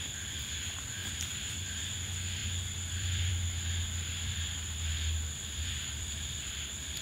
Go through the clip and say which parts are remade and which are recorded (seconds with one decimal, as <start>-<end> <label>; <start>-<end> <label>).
0.0-1.0 recorded; 1.0-1.5 remade; 1.5-2.4 recorded; 2.4-3.3 remade; 3.3-4.1 recorded; 4.1-6.4 remade; 6.4-7.0 recorded